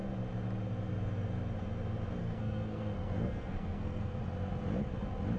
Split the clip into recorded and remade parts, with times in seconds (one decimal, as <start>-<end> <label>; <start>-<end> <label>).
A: 0.0-2.2 recorded; 2.2-4.2 remade; 4.2-5.4 recorded

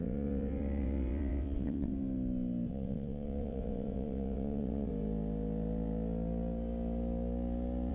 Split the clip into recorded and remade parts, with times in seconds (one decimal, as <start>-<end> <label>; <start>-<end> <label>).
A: 0.0-1.9 remade; 1.9-2.7 recorded; 2.7-4.9 remade; 4.9-7.9 recorded

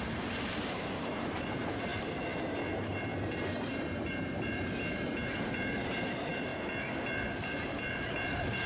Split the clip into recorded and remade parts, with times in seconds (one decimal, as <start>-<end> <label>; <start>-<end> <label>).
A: 0.0-1.9 remade; 1.9-2.6 recorded; 2.6-6.5 remade; 6.5-7.6 recorded; 7.6-8.7 remade

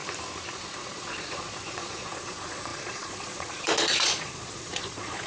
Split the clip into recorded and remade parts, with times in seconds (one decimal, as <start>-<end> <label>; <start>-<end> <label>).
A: 0.0-0.5 recorded; 0.5-5.3 remade

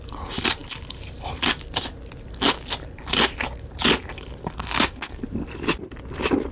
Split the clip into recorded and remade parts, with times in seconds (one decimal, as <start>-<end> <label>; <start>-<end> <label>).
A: 0.0-4.4 recorded; 4.4-5.2 remade; 5.2-6.5 recorded